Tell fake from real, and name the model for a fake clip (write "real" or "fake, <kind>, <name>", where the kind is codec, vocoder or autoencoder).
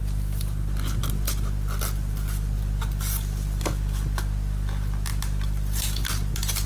real